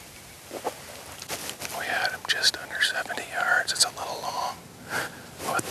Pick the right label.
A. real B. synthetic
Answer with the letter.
A